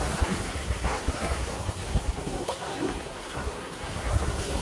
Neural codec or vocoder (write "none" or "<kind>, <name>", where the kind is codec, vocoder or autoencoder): codec, SNAC